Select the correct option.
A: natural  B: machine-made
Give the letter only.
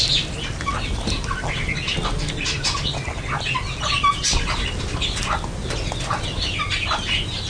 A